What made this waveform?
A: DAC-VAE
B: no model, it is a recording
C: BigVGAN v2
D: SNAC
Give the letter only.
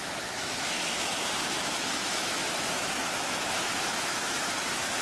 A